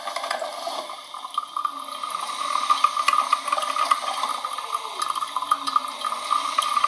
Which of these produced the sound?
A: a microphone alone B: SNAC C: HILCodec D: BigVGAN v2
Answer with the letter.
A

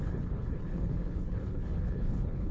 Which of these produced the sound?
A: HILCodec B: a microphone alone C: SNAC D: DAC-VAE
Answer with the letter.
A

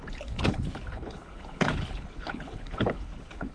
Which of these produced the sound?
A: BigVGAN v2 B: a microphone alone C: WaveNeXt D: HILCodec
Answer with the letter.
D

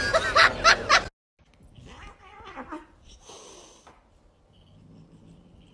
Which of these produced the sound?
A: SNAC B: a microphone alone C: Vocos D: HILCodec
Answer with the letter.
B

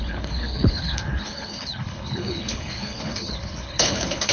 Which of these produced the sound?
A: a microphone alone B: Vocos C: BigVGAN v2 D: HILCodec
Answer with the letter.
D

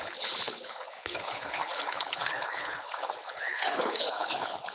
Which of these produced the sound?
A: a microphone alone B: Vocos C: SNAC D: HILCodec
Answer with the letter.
D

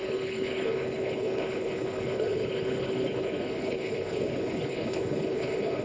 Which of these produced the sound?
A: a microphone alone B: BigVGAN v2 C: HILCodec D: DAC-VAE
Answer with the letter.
C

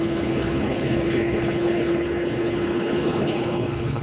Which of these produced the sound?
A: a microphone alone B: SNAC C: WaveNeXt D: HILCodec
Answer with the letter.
D